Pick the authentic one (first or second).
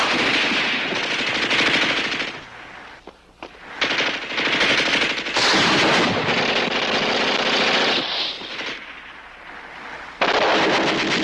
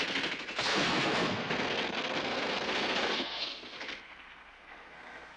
first